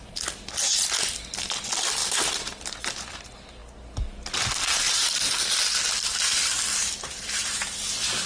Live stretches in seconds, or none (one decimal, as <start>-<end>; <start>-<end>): 0.0-2.0; 3.2-6.8; 7.8-8.3